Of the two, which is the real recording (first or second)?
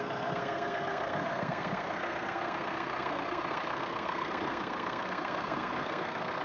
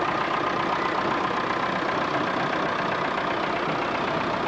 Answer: second